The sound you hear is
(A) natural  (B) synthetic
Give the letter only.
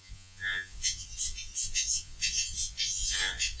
B